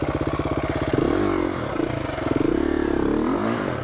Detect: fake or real real